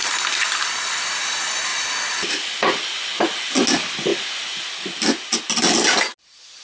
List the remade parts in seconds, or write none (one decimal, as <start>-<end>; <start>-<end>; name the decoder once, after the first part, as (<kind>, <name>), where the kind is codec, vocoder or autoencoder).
0.0-0.9 (vocoder, BigVGAN v2)